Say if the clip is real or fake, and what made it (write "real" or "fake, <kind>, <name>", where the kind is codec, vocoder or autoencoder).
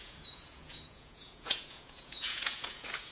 fake, vocoder, Vocos